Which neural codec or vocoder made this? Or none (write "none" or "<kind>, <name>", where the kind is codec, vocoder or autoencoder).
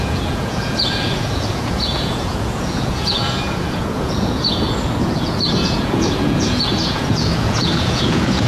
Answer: vocoder, Vocos